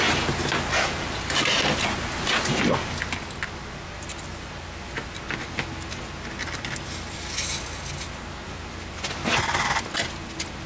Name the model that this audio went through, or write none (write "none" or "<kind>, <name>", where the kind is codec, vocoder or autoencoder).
none